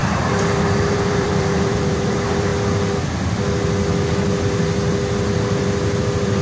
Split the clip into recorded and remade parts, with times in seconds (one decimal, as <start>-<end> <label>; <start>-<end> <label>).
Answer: 0.0-2.5 remade; 2.5-6.0 recorded; 6.0-6.4 remade